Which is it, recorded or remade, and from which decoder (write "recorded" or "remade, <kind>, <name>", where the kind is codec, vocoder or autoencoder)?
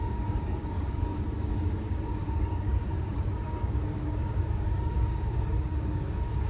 remade, codec, DAC